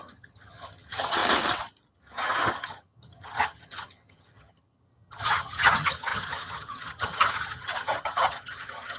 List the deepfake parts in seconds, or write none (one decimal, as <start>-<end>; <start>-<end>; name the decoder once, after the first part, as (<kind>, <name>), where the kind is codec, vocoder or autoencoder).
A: 0.0-1.2 (vocoder, HiFi-GAN); 1.9-9.0